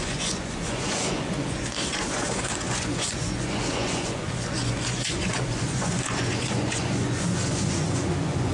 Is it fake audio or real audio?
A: fake